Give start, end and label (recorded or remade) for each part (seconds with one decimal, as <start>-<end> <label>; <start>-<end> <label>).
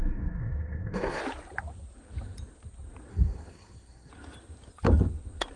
0.0-1.2 remade; 1.2-3.1 recorded; 3.1-4.1 remade; 4.1-5.6 recorded